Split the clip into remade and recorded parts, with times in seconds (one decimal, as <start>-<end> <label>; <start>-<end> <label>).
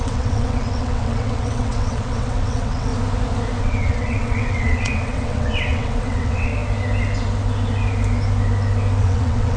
0.0-2.9 remade; 2.9-3.6 recorded; 3.6-6.5 remade; 6.5-9.0 recorded; 9.0-9.6 remade